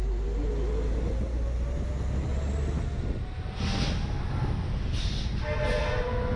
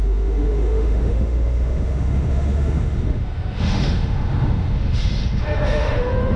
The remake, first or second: second